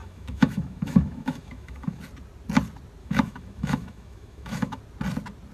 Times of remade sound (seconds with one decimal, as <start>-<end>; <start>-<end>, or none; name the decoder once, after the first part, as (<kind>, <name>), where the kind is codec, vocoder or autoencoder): 0.0-2.0 (autoencoder, DAC-VAE); 3.0-4.8